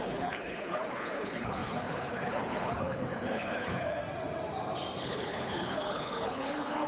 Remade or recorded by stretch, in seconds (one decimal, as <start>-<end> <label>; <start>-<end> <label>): 0.0-4.0 remade; 4.0-5.0 recorded; 5.0-6.9 remade